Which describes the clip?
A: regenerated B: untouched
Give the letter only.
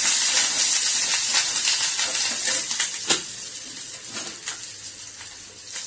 B